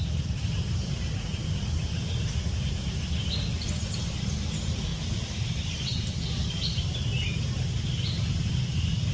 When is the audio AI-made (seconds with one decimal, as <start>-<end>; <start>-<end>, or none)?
none